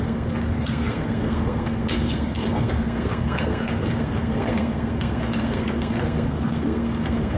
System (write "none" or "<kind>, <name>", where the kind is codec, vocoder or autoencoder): codec, SNAC